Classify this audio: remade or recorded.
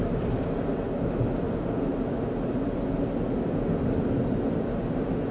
recorded